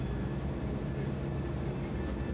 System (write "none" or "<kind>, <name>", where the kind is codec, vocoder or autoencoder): none